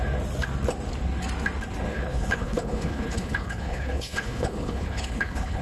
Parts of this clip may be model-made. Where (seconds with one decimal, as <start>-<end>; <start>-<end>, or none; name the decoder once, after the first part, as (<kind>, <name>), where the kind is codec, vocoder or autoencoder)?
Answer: 1.9-5.6 (codec, HILCodec)